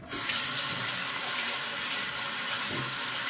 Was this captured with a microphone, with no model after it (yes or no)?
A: yes